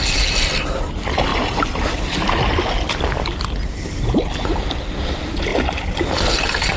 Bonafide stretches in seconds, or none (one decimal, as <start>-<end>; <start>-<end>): 0.0-6.8